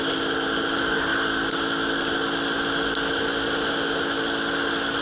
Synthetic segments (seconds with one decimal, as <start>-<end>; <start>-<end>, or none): none